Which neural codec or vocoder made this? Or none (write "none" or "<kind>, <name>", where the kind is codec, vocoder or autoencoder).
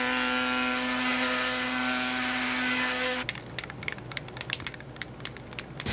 none